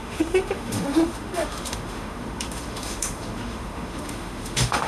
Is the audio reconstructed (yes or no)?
yes